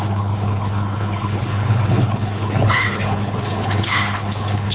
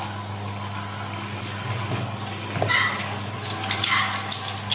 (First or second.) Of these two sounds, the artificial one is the first